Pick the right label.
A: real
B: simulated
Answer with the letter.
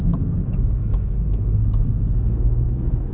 B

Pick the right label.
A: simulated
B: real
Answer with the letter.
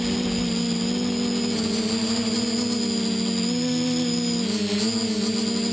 B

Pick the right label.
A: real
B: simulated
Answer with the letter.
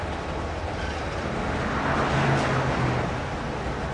A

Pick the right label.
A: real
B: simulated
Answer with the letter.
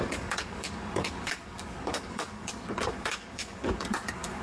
B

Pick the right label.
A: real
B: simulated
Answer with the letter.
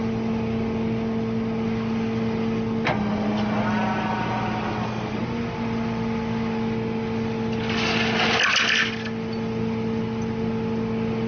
A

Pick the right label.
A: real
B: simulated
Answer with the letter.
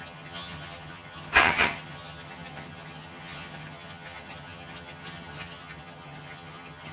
B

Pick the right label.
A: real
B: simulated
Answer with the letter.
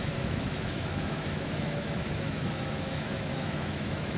B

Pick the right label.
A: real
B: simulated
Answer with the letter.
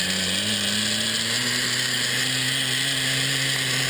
A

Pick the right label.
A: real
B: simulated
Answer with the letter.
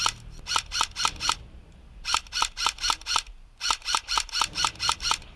B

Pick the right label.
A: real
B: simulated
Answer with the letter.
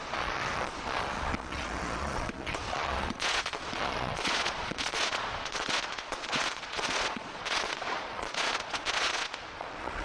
B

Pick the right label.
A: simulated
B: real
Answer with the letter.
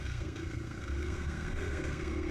A